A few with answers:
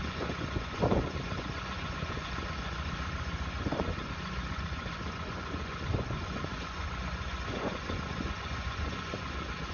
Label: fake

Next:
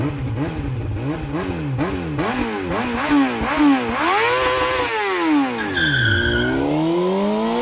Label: real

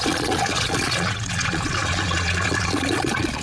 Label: fake